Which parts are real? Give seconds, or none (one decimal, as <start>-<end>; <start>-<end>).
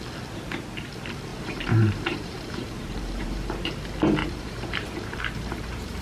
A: 0.0-1.3; 3.8-4.2